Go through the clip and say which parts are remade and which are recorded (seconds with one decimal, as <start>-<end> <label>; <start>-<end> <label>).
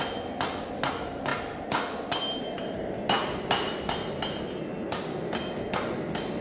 0.0-6.4 recorded